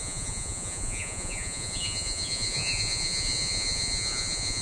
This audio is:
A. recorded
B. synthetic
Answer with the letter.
B